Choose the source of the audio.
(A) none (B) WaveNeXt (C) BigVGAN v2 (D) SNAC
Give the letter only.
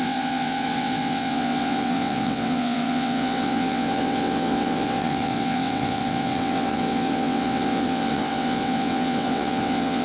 B